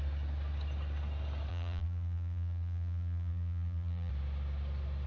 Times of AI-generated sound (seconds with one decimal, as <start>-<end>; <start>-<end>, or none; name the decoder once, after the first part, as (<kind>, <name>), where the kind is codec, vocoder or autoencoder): 1.5-4.1 (vocoder, BigVGAN v2)